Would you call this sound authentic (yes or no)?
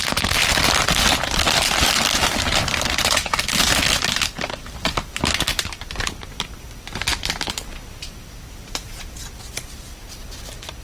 yes